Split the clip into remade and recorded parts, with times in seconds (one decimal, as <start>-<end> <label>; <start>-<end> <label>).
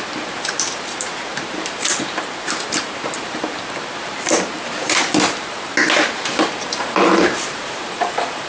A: 0.0-5.0 remade; 5.0-6.0 recorded; 6.0-8.5 remade